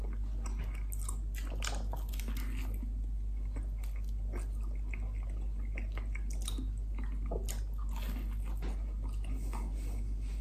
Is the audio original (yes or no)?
yes